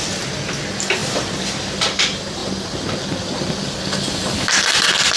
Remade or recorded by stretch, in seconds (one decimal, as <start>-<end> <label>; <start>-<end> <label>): 0.0-5.2 recorded